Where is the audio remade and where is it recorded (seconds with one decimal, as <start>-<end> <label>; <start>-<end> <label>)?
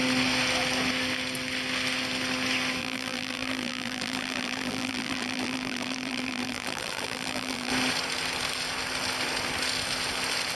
0.0-2.8 recorded; 2.8-7.7 remade; 7.7-10.5 recorded